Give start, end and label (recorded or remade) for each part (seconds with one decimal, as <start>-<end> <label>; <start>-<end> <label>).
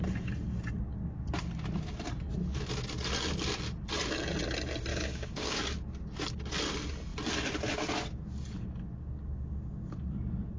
0.0-4.9 recorded; 4.9-5.6 remade; 5.6-10.6 recorded